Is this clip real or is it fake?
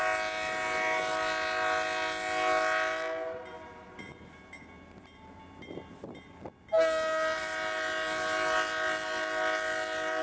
real